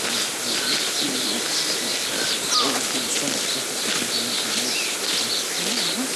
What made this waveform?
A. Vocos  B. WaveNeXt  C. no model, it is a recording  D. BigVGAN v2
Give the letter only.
C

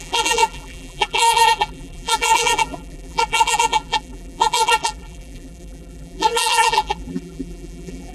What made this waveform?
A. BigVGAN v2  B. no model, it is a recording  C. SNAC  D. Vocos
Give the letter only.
A